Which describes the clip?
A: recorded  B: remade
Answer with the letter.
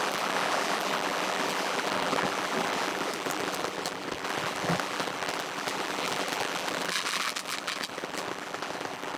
B